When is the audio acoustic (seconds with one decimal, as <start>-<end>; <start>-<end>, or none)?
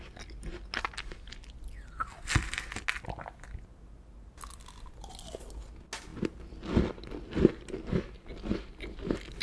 0.0-9.4